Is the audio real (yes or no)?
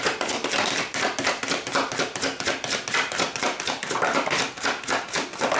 no